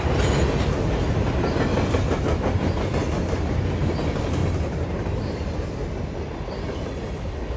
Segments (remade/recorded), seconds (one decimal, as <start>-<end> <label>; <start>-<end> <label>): 0.0-7.6 recorded